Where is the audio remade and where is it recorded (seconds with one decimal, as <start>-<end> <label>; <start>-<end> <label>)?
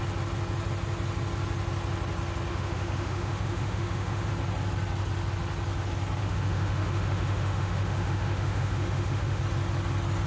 0.0-2.5 recorded; 2.5-4.3 remade; 4.3-6.2 recorded; 6.2-9.4 remade; 9.4-10.3 recorded